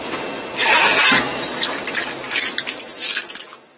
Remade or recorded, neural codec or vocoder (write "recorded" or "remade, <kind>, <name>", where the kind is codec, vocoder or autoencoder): recorded